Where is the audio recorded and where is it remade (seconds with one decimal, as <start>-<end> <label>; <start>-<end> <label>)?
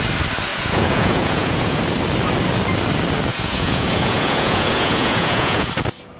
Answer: 0.0-0.5 recorded; 0.5-1.8 remade; 1.8-3.3 recorded; 3.3-5.7 remade; 5.7-6.2 recorded